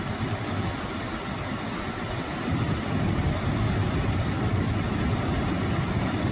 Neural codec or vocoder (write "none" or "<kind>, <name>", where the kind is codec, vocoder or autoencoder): none